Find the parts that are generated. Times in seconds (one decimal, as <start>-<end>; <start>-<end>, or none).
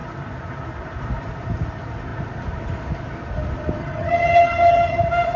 3.8-5.0